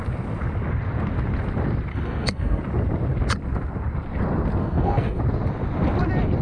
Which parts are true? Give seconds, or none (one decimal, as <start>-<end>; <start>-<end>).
0.0-1.9; 2.6-4.6; 5.2-6.4